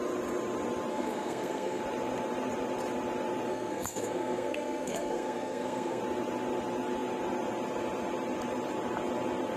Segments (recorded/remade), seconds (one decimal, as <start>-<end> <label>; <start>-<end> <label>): 0.0-0.9 recorded; 0.9-1.8 remade; 1.8-3.5 recorded; 3.5-6.0 remade; 6.0-9.6 recorded

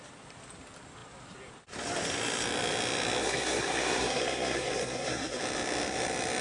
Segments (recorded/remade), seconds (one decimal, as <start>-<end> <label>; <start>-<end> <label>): 0.0-3.2 recorded; 3.2-5.4 remade; 5.4-6.4 recorded

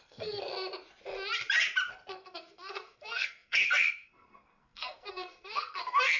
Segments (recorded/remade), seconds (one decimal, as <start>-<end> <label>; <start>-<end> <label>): 0.0-0.5 remade; 0.5-1.9 recorded; 1.9-6.2 remade

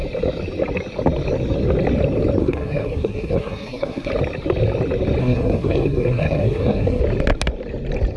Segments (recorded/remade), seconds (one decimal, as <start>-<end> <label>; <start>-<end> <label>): 0.0-2.4 recorded; 2.4-4.1 remade; 4.1-5.2 recorded; 5.2-7.0 remade; 7.0-8.2 recorded

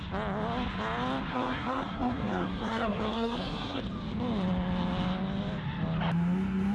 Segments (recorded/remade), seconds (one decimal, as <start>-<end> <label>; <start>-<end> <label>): 0.0-1.3 recorded; 1.3-3.8 remade; 3.8-6.7 recorded

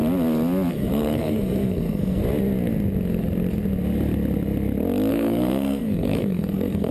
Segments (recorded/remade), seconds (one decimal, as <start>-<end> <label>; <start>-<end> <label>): 0.0-0.7 recorded; 0.7-2.2 remade; 2.2-5.1 recorded; 5.1-6.9 remade

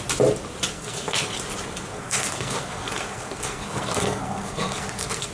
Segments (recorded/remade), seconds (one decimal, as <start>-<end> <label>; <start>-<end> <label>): 0.0-0.7 recorded; 0.7-1.3 remade; 1.3-1.9 recorded; 1.9-5.3 remade

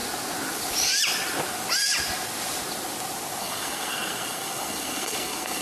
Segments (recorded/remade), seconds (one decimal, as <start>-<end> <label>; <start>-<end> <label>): 0.0-3.4 recorded; 3.4-5.6 remade